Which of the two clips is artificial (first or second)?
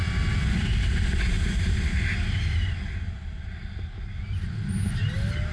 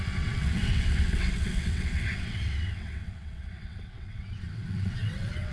second